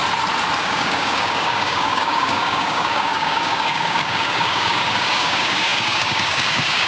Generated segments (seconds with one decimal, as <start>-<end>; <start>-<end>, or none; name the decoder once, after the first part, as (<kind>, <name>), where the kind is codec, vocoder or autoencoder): 0.6-6.9 (codec, DAC)